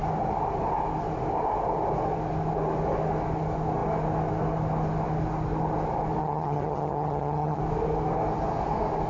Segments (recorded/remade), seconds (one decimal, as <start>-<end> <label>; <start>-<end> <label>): 0.0-6.2 recorded; 6.2-7.6 remade; 7.6-9.1 recorded